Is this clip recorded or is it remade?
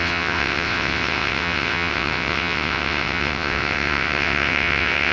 remade